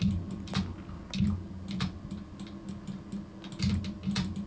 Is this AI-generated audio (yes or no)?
no